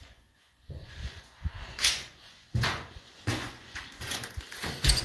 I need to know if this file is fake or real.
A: fake